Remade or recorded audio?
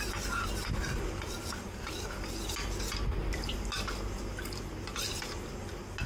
recorded